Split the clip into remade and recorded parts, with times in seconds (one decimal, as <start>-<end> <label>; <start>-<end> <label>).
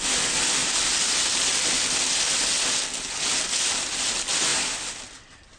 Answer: 0.0-5.6 recorded